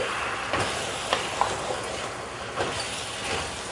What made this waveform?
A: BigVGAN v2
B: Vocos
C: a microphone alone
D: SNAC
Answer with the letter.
C